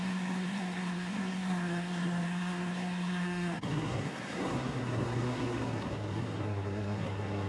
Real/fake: fake